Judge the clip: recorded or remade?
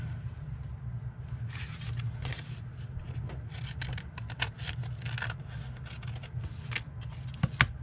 recorded